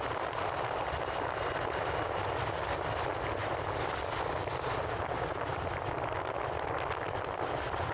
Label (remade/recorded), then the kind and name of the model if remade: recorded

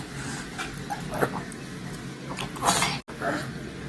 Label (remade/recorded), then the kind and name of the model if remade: recorded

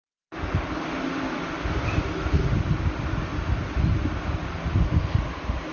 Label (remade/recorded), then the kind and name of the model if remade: recorded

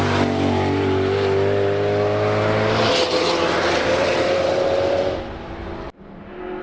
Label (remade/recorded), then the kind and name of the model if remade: recorded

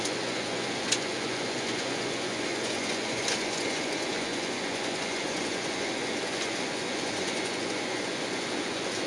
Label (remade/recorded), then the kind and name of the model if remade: remade, vocoder, Vocos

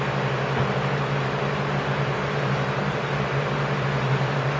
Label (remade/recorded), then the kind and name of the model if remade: recorded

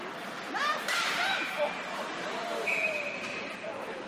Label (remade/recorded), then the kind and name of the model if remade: remade, vocoder, BigVGAN v2